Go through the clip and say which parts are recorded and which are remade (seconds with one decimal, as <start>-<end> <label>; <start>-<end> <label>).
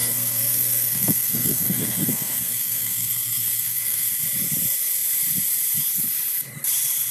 0.0-4.1 remade; 4.1-7.1 recorded